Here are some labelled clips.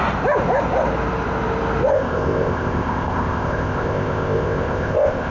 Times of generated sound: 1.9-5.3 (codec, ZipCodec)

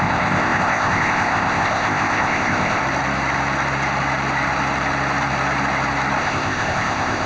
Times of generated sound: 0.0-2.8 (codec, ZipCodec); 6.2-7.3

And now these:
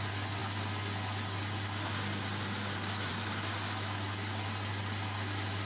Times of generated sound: none

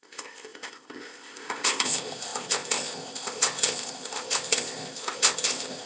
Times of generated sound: 0.0-5.9 (codec, ZipCodec)

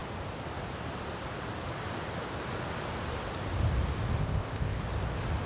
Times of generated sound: 4.2-4.8 (codec, ZipCodec)

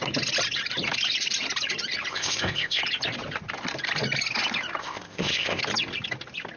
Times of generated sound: 2.1-2.8 (codec, ZipCodec); 4.8-5.6